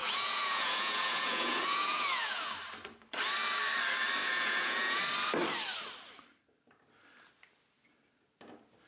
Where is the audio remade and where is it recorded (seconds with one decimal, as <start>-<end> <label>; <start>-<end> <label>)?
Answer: 0.0-2.5 remade; 2.5-4.2 recorded; 4.2-5.0 remade; 5.0-8.9 recorded